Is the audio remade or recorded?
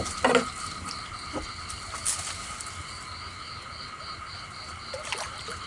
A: recorded